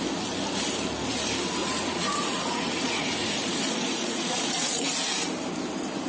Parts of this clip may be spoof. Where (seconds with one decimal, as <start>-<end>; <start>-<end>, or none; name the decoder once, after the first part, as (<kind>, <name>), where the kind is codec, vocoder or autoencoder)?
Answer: 1.6-4.8 (vocoder, Vocos)